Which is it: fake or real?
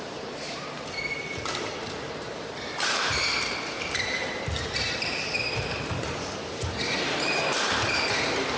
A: fake